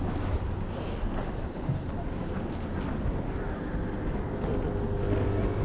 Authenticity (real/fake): real